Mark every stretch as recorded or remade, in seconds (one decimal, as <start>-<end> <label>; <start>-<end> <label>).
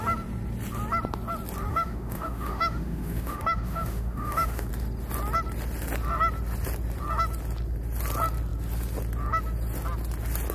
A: 0.0-1.7 recorded; 1.7-4.7 remade; 4.7-10.5 recorded